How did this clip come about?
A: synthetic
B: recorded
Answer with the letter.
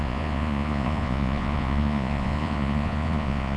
A